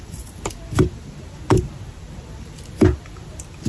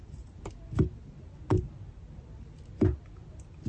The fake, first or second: first